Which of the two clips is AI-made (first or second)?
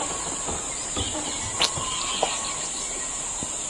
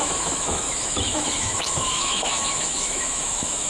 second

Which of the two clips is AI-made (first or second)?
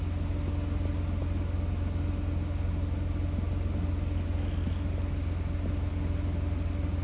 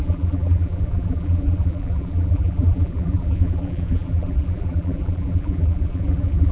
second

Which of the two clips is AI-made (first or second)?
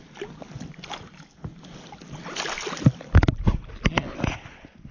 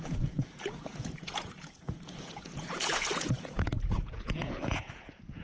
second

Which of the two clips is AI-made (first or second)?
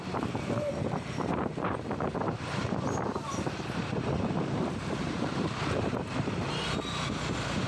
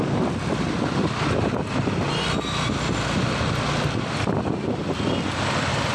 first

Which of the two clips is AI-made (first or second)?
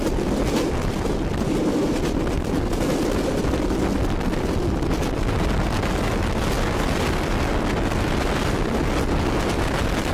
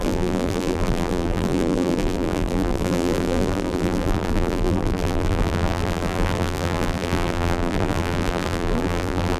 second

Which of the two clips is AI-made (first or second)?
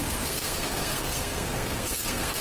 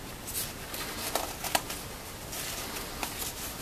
first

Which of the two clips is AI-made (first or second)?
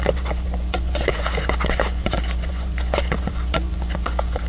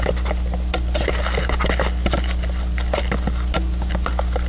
first